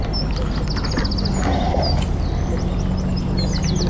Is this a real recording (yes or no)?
yes